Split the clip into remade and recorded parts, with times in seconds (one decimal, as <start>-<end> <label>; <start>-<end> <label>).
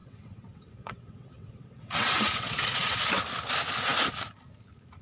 0.0-3.0 remade; 3.0-5.0 recorded